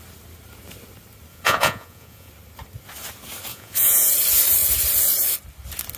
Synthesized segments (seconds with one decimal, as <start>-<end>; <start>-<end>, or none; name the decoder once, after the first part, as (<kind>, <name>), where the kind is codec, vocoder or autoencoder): 1.3-2.3 (vocoder, Vocos); 3.5-4.1